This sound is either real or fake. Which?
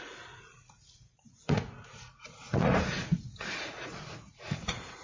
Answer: fake